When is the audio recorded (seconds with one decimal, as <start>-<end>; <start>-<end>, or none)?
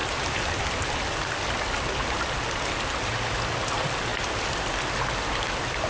0.0-5.9